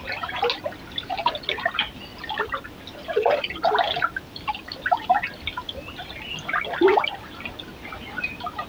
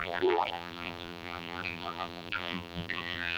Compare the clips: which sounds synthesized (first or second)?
second